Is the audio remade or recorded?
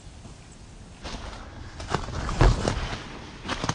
recorded